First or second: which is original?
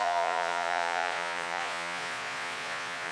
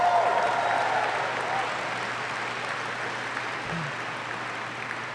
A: second